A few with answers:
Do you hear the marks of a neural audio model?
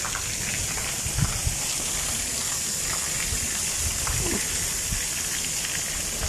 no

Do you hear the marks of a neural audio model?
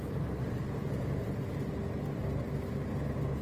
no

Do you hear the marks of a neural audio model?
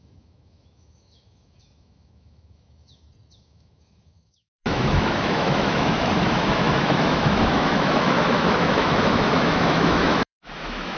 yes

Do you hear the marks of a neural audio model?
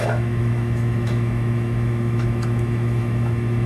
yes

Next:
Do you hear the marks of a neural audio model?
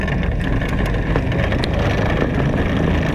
no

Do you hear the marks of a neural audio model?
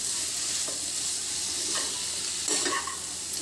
no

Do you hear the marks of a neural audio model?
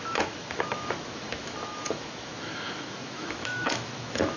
yes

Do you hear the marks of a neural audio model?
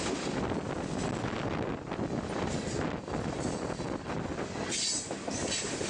no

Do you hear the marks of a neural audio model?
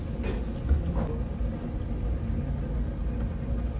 no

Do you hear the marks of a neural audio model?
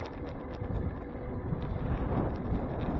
no